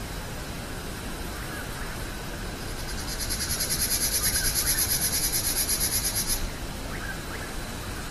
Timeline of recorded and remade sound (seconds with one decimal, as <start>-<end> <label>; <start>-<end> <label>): 0.0-3.1 recorded; 3.1-5.2 remade; 5.2-8.1 recorded

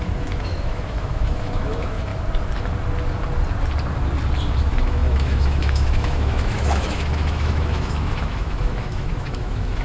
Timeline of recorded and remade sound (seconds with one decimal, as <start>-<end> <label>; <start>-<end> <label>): 0.0-2.1 remade; 2.1-4.6 recorded; 4.6-9.8 remade